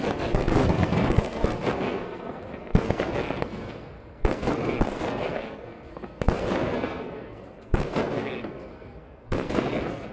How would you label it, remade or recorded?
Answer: remade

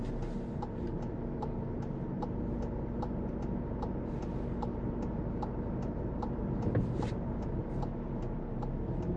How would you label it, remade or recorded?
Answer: recorded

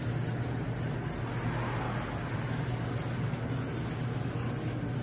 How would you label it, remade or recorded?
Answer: recorded